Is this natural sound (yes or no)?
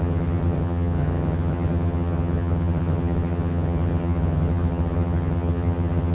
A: no